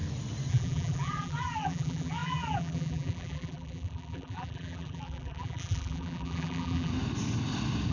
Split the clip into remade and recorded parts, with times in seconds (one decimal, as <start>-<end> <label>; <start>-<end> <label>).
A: 0.0-0.5 recorded; 0.5-6.9 remade; 6.9-7.9 recorded